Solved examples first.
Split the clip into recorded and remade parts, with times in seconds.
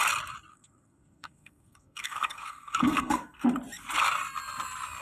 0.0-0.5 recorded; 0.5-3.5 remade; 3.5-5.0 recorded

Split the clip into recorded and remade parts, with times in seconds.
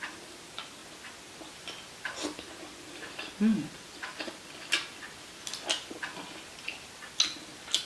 0.0-7.9 recorded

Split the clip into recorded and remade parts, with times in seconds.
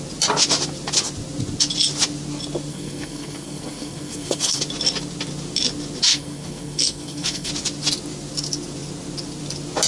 0.0-2.7 recorded; 2.7-4.6 remade; 4.6-6.1 recorded; 6.1-7.5 remade; 7.5-9.9 recorded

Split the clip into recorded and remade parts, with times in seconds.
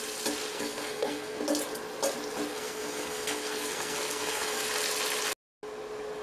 0.0-0.5 recorded; 0.5-1.4 remade; 1.4-2.5 recorded; 2.5-4.7 remade; 4.7-6.2 recorded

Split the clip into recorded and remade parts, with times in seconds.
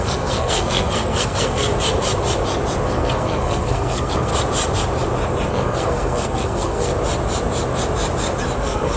0.0-1.7 remade; 1.7-2.9 recorded; 2.9-4.3 remade; 4.3-5.5 recorded; 5.5-6.9 remade; 6.9-8.6 recorded; 8.6-9.0 remade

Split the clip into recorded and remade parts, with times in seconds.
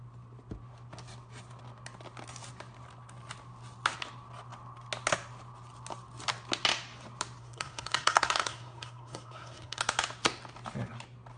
0.0-7.4 recorded; 7.4-9.8 remade; 9.8-11.4 recorded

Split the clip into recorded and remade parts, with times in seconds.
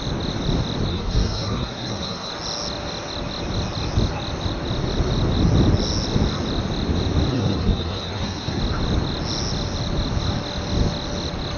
0.0-0.9 recorded; 0.9-2.3 remade; 2.3-7.3 recorded; 7.3-8.6 remade; 8.6-11.6 recorded